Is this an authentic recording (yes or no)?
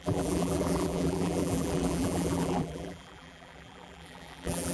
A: no